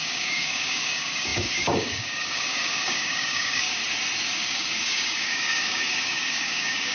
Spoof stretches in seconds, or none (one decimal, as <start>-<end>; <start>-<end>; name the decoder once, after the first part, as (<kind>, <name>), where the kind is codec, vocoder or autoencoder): 0.0-3.8 (codec, DAC); 4.3-6.9